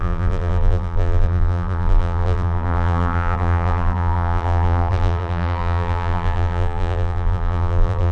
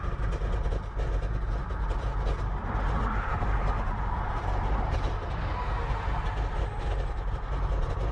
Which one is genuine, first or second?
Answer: second